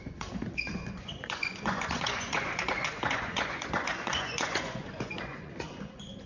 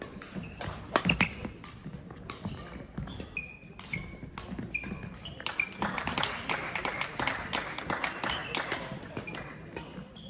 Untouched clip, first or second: second